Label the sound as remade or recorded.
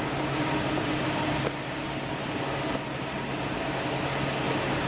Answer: recorded